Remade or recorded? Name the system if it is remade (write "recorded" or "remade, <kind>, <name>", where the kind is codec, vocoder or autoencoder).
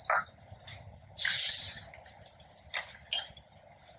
recorded